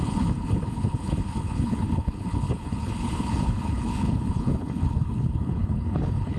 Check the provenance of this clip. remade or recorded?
remade